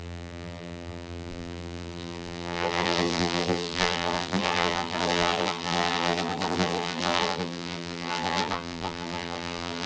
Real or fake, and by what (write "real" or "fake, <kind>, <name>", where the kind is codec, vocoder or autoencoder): fake, vocoder, BigVGAN v2